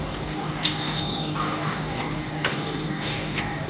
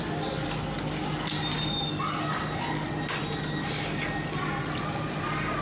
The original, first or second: second